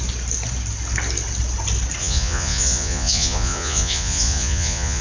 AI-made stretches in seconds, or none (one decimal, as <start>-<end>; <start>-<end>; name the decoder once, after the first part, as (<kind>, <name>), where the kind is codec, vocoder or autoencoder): 2.0-5.0 (vocoder, Vocos)